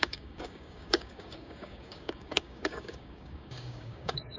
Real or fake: fake